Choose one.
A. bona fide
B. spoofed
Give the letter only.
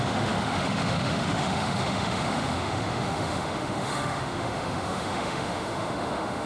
B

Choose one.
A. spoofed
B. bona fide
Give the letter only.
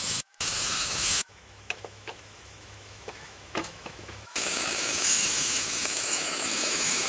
A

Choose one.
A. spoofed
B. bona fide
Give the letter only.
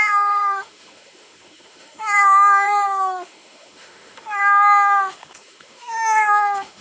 A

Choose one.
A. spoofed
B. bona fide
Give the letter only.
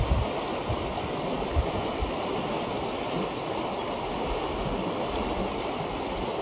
B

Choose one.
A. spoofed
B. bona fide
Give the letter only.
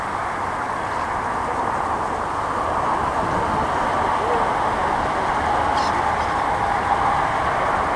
B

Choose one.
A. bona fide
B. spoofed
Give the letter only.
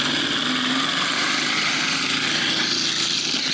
A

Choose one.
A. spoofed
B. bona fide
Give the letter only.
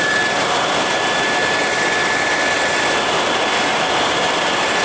B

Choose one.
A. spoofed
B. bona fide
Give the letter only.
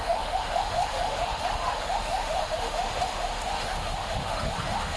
A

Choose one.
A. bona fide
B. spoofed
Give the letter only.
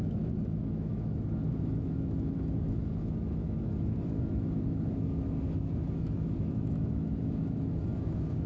B